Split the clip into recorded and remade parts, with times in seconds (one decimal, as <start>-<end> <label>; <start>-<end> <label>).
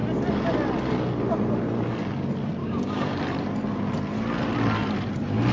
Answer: 0.0-2.6 recorded; 2.6-3.2 remade; 3.2-5.5 recorded